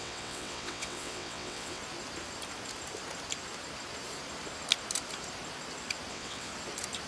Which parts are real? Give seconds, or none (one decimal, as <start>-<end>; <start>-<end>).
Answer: 1.8-6.1; 6.5-7.1